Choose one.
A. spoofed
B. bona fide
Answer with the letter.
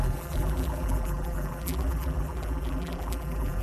A